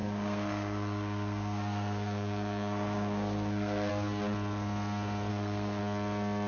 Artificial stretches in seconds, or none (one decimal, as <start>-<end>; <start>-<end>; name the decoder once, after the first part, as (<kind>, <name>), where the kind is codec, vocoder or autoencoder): 0.0-3.9 (codec, SNAC); 5.3-5.8